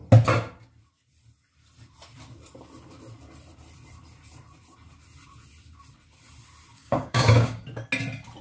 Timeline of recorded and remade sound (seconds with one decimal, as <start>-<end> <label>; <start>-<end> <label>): 0.0-6.7 recorded; 6.7-7.6 remade; 7.6-8.4 recorded